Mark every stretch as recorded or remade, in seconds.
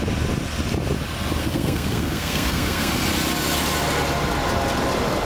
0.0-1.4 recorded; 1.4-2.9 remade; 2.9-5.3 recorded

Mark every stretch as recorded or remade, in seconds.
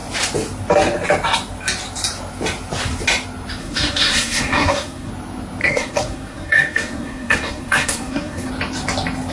0.0-3.6 recorded; 3.6-5.1 remade; 5.1-5.6 recorded; 5.6-8.5 remade; 8.5-9.3 recorded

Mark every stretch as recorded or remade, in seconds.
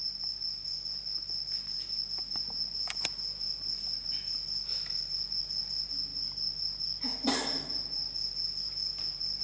0.0-9.4 recorded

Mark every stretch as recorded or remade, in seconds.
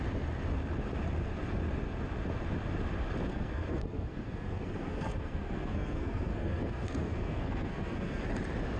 0.0-3.3 recorded; 3.3-8.2 remade; 8.2-8.8 recorded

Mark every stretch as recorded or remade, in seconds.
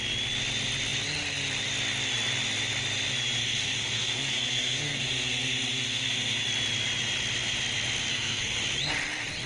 0.0-3.4 recorded; 3.4-6.4 remade; 6.4-8.1 recorded; 8.1-8.6 remade; 8.6-9.5 recorded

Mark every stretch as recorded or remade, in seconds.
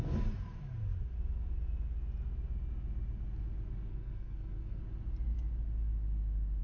0.0-3.9 recorded; 3.9-4.8 remade; 4.8-6.6 recorded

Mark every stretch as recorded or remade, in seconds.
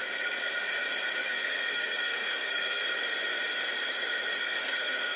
0.0-1.3 recorded; 1.3-2.8 remade; 2.8-4.4 recorded; 4.4-5.2 remade